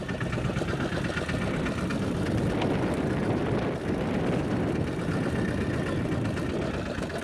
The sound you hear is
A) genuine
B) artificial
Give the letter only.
A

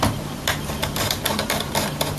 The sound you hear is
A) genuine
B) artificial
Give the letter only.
B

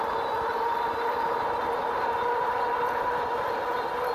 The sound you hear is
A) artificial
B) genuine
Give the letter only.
A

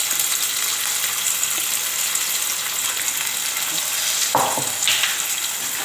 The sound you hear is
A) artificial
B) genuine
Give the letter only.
B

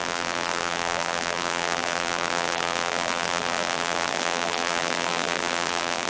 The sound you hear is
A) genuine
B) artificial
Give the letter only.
B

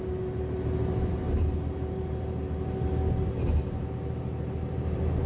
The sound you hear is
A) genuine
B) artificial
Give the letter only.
A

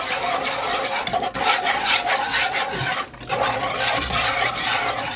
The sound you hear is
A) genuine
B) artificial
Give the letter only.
B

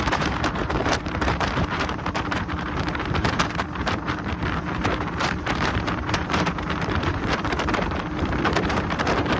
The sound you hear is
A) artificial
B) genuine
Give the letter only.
A